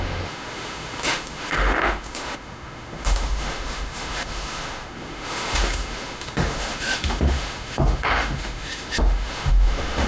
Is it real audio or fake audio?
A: fake